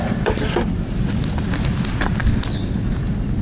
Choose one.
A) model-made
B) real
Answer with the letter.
B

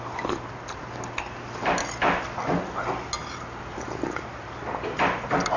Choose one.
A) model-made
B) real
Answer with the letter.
B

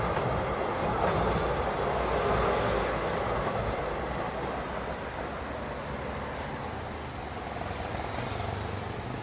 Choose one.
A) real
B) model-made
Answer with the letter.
A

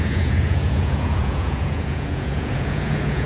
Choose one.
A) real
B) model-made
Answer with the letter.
B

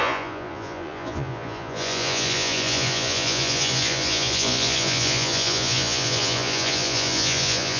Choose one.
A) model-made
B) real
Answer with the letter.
A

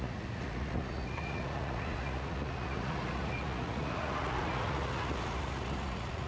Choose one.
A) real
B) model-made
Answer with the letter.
B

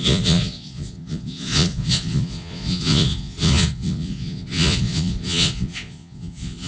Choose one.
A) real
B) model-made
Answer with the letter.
B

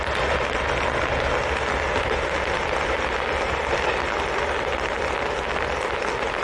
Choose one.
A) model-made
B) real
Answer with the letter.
B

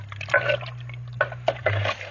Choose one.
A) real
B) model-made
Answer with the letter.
A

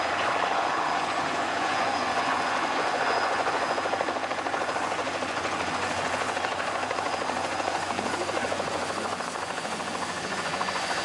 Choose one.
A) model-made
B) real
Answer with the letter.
A